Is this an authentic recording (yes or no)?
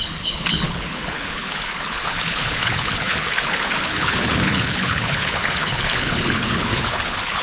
no